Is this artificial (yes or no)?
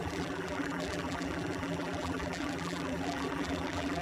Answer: yes